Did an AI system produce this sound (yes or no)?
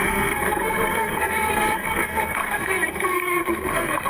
yes